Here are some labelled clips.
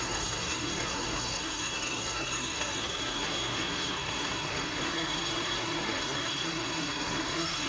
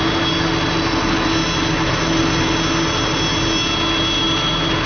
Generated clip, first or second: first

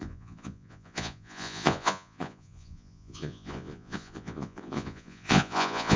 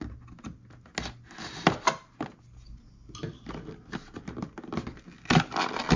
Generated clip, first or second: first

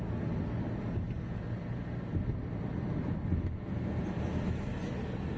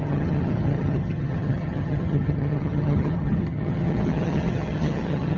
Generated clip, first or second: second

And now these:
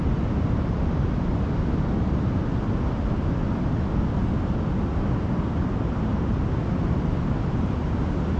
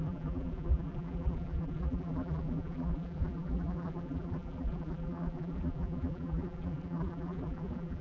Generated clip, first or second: second